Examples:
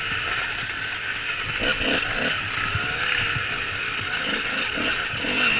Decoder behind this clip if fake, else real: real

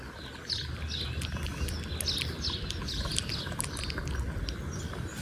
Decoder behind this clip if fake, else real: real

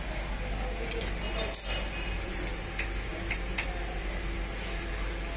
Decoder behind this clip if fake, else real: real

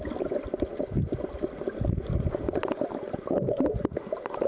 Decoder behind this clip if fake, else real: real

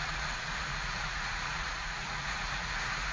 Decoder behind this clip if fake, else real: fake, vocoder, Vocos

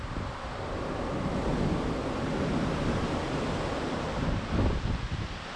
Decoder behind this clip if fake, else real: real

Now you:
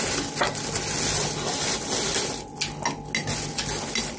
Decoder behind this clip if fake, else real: real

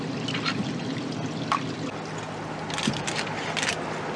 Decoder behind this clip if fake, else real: real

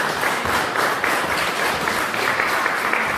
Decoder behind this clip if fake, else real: real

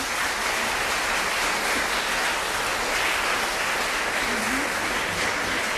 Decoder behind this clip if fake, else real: real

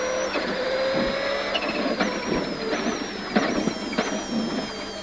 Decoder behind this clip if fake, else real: real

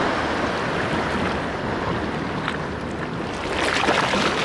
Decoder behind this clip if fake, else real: real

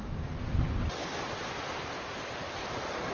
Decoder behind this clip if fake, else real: real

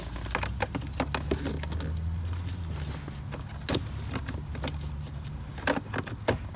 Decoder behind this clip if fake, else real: real